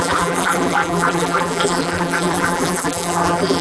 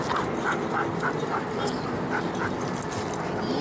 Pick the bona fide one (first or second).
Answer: second